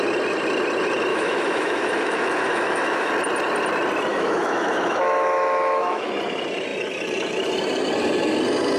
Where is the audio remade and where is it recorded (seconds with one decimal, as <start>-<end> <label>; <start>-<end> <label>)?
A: 0.0-1.1 recorded; 1.1-3.1 remade; 3.1-4.1 recorded; 4.1-6.1 remade; 6.1-8.8 recorded